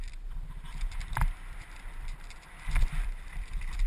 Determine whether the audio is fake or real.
fake